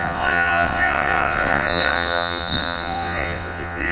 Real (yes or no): no